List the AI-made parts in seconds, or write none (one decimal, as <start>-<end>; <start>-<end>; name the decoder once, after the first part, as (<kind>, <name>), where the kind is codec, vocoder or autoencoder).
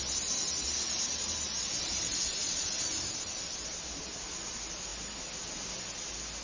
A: 0.6-3.8 (vocoder, BigVGAN v2)